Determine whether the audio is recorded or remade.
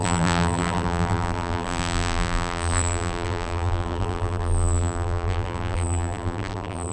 remade